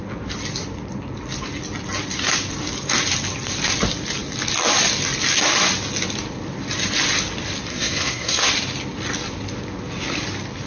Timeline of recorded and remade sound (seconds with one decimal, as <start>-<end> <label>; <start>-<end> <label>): 0.0-7.7 recorded; 7.7-8.5 remade; 8.5-10.7 recorded